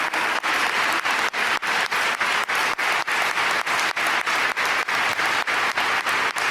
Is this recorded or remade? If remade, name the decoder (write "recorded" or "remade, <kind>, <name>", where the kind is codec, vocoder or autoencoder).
recorded